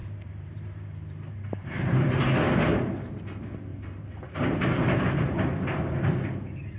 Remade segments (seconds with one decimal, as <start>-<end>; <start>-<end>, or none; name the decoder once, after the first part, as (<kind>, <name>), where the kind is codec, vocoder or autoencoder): 0.0-2.2 (vocoder, BigVGAN v2); 3.7-5.0